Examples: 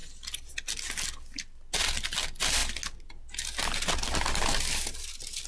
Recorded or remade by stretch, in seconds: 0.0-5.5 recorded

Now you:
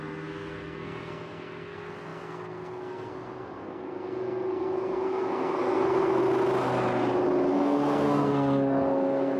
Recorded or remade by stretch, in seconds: 0.0-6.2 remade; 6.2-7.5 recorded; 7.5-9.4 remade

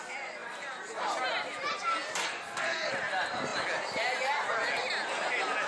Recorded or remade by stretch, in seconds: 0.0-2.2 recorded; 2.2-2.9 remade; 2.9-5.7 recorded

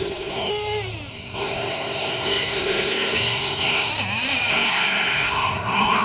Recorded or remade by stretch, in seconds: 0.0-0.5 remade; 0.5-1.1 recorded; 1.1-3.9 remade; 3.9-4.5 recorded; 4.5-6.0 remade

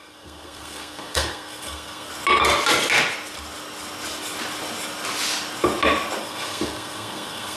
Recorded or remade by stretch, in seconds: 0.0-2.1 remade; 2.1-6.2 recorded; 6.2-7.6 remade

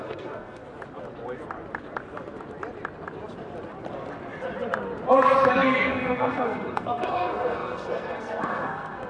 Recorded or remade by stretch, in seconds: 0.0-0.6 remade; 0.6-5.5 recorded; 5.5-9.1 remade

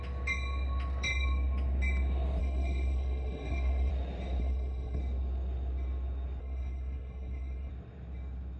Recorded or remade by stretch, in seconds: 0.0-2.4 recorded; 2.4-3.9 remade; 3.9-4.4 recorded; 4.4-5.0 remade; 5.0-6.4 recorded; 6.4-7.7 remade; 7.7-8.6 recorded